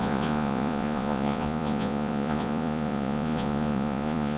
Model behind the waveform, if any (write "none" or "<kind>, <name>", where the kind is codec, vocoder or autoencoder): vocoder, Vocos